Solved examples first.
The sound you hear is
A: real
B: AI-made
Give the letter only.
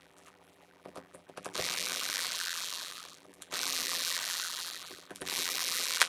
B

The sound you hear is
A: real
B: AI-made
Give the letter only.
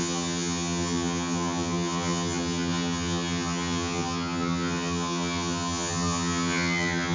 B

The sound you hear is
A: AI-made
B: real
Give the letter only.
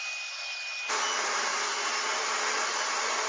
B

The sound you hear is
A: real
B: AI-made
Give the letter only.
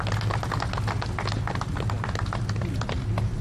A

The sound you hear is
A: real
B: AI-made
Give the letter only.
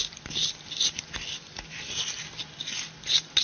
A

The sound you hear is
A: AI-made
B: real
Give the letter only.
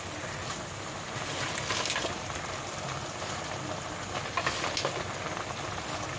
B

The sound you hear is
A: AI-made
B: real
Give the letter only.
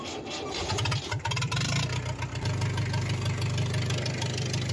B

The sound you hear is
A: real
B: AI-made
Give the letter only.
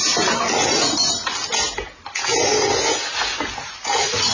A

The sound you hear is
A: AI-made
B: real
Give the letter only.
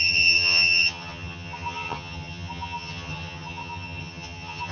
A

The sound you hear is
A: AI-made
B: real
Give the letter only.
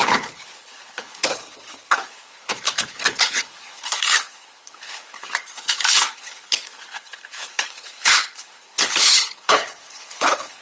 A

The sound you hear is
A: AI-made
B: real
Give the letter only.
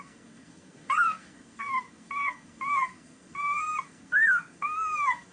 A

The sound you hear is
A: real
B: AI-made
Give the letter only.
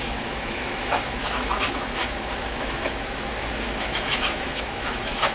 B